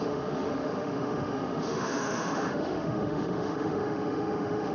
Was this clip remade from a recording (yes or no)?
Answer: yes